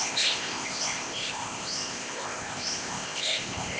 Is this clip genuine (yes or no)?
no